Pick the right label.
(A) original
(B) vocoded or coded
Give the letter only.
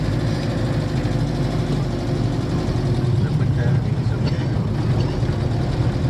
A